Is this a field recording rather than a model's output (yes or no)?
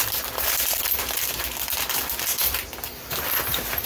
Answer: no